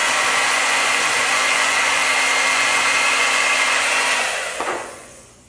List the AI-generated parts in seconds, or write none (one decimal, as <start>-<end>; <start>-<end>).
0.0-2.0; 2.5-5.5